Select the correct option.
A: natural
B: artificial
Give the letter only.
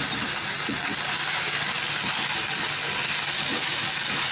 A